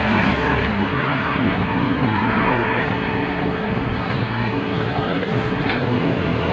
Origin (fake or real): fake